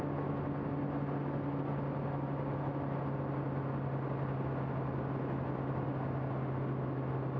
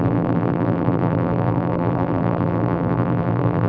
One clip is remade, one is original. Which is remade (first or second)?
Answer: second